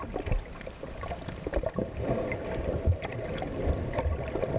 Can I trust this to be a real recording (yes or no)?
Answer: no